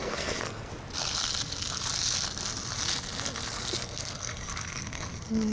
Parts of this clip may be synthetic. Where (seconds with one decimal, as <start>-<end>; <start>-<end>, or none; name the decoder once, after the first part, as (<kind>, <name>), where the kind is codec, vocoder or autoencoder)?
0.0-0.7 (codec, SNAC); 3.6-5.5